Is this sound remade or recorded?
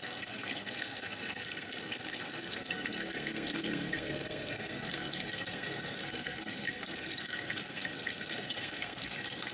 remade